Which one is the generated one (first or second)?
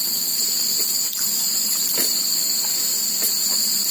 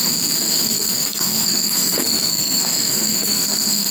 second